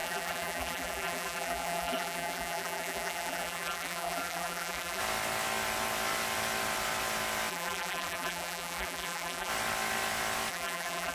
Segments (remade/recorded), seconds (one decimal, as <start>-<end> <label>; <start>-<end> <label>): 0.0-5.0 remade; 5.0-7.5 recorded; 7.5-9.5 remade; 9.5-10.5 recorded; 10.5-11.1 remade